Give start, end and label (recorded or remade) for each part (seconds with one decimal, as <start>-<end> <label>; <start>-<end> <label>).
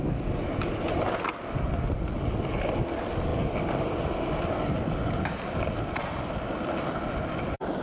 0.0-7.8 recorded